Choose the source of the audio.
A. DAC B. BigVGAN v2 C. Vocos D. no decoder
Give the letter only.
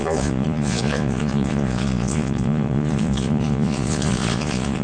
C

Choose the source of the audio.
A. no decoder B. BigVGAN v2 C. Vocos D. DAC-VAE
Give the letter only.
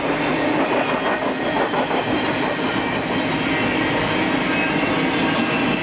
A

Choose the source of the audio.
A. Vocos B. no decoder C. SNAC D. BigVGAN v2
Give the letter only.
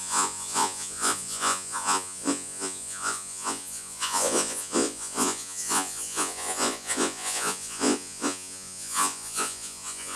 A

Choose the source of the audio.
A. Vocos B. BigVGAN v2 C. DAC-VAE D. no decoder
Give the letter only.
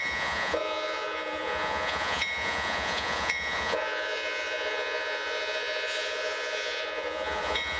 A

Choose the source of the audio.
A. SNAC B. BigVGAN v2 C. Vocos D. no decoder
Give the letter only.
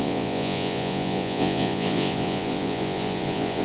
C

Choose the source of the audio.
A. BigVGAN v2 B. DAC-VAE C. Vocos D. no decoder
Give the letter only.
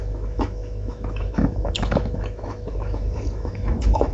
B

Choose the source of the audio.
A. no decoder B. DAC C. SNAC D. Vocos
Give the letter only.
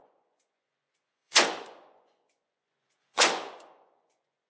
D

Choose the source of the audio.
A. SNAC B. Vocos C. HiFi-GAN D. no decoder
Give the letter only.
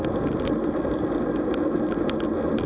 D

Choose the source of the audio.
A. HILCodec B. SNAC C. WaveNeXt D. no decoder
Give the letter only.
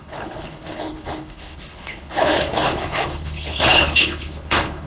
A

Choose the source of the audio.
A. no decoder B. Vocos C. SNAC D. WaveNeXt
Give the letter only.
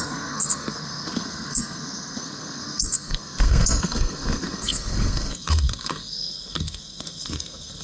C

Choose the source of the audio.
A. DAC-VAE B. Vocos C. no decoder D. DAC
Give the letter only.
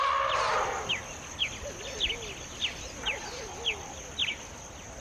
C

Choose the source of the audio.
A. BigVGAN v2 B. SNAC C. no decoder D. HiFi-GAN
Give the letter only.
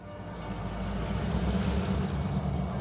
C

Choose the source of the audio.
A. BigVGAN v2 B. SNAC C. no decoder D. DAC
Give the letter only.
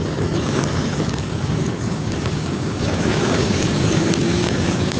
D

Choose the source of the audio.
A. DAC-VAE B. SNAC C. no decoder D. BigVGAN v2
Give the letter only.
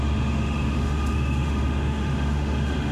A